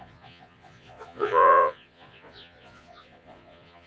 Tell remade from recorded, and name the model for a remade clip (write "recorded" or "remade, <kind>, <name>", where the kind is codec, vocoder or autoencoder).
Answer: remade, vocoder, Vocos